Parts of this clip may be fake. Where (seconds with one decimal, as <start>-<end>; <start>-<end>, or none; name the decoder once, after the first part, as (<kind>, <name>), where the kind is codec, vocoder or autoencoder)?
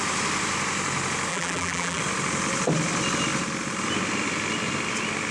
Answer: 1.3-2.0 (vocoder, BigVGAN v2)